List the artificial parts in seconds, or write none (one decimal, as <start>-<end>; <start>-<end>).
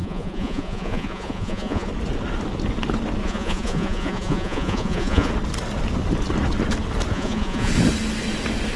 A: 0.0-1.9; 3.2-5.3; 7.1-7.7